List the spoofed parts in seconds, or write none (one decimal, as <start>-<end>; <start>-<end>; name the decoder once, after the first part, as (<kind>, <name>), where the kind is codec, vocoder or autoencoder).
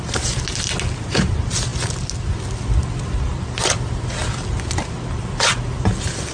none